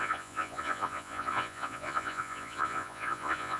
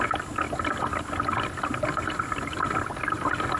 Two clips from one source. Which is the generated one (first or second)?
first